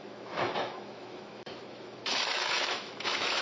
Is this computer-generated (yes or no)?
yes